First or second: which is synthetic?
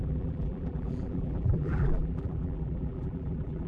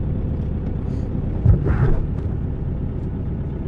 first